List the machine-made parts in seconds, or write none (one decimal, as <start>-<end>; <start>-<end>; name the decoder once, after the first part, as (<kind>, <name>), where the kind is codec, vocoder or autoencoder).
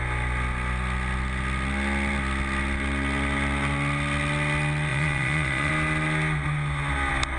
4.9-5.7 (vocoder, Vocos)